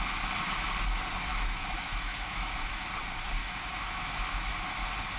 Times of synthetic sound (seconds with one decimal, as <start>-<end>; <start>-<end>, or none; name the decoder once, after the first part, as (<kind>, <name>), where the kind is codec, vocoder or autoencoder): 1.3-2.8 (autoencoder, DAC-VAE); 3.4-4.5